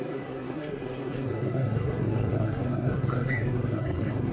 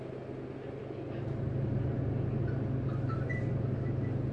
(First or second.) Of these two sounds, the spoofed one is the first